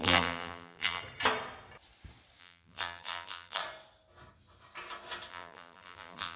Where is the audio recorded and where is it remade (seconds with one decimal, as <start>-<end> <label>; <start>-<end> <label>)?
0.0-1.0 remade; 1.0-2.4 recorded; 2.4-3.6 remade; 3.6-5.3 recorded; 5.3-6.4 remade